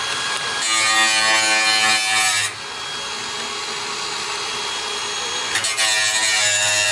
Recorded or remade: recorded